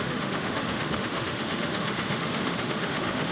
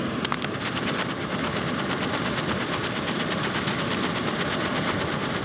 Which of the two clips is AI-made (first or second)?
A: first